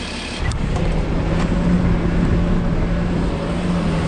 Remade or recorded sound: recorded